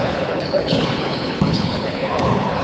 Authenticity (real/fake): fake